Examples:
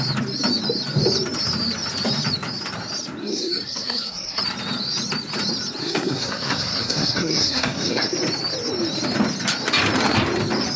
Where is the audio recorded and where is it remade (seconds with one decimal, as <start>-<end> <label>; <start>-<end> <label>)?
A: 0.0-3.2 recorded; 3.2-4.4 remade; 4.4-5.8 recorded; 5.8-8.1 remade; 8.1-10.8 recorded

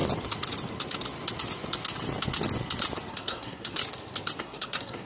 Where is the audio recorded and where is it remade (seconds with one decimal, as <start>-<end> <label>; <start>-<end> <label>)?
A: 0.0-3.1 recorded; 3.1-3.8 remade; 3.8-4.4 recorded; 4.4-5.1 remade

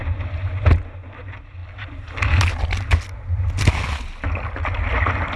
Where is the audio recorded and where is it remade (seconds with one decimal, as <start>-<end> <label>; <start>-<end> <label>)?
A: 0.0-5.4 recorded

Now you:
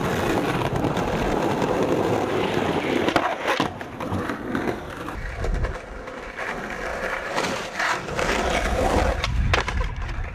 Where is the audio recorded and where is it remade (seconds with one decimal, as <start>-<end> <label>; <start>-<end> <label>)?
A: 0.0-6.9 recorded; 6.9-8.4 remade; 8.4-10.3 recorded

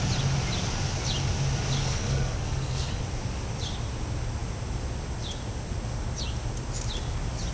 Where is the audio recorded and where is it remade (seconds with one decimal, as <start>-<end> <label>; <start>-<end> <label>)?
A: 0.0-1.8 recorded; 1.8-3.0 remade; 3.0-7.5 recorded